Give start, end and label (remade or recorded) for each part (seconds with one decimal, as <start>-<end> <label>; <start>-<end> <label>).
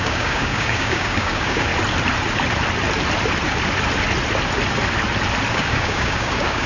0.0-1.7 remade; 1.7-5.5 recorded; 5.5-6.7 remade